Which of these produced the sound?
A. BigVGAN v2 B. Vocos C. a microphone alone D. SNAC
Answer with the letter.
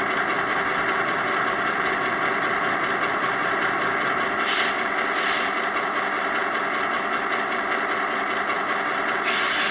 C